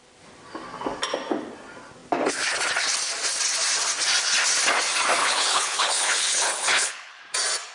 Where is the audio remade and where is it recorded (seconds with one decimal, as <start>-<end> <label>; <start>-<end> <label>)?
0.0-5.2 recorded; 5.2-7.2 remade; 7.2-7.7 recorded